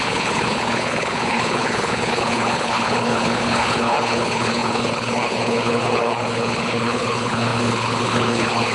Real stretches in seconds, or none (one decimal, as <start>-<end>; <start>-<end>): none